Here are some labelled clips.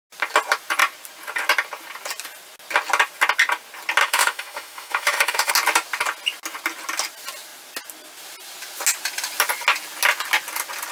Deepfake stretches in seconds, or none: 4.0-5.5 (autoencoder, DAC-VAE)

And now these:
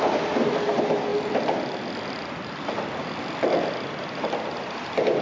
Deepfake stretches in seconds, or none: none

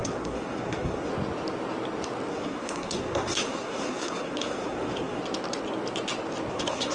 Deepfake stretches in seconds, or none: 0.0-1.1 (codec, SNAC); 2.3-5.2; 6.5-6.9